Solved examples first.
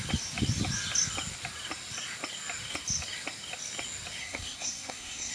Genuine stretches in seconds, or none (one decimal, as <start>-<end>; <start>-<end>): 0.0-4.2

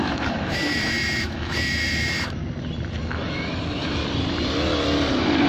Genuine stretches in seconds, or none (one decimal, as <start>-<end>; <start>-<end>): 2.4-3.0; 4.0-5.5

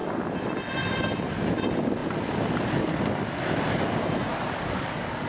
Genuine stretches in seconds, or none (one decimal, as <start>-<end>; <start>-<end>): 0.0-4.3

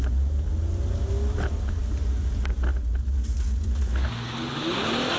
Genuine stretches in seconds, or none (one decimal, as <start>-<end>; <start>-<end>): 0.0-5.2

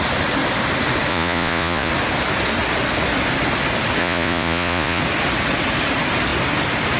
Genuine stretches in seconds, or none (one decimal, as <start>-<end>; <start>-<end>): 0.0-1.1; 1.9-4.0; 5.0-7.0